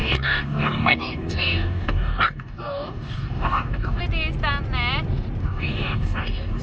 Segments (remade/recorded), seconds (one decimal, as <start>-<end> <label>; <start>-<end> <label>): 0.0-4.0 remade; 4.0-5.4 recorded; 5.4-6.6 remade